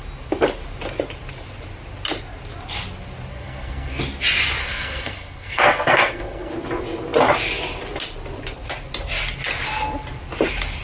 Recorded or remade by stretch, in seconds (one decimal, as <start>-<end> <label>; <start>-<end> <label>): 0.0-3.3 recorded; 3.3-4.0 remade; 4.0-4.6 recorded; 4.6-6.5 remade; 6.5-10.8 recorded